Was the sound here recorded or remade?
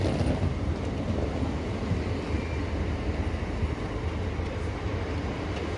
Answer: recorded